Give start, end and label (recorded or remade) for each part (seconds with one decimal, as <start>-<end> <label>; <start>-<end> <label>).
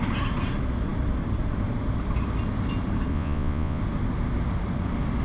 0.0-3.1 recorded; 3.1-3.8 remade; 3.8-5.2 recorded